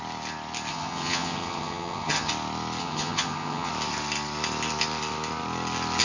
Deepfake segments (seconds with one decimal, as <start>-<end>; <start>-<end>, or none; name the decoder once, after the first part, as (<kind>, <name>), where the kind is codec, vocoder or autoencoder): 0.7-2.3 (vocoder, HiFi-GAN); 2.8-3.7